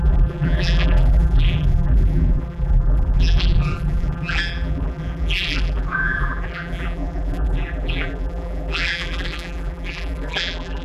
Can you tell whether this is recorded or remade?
remade